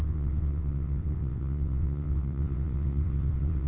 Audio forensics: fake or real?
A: fake